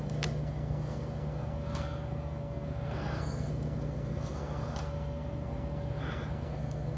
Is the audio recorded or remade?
remade